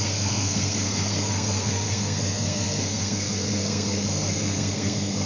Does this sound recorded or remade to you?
remade